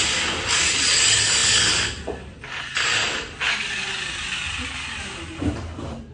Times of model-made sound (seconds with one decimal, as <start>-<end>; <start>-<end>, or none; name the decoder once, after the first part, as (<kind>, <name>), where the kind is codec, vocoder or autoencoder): none